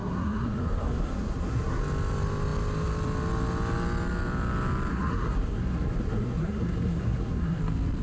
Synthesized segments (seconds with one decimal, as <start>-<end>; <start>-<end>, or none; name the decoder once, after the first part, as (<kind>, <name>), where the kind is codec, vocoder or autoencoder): 0.0-1.8 (codec, SNAC); 4.9-7.6